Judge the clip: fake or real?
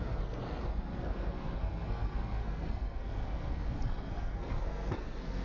fake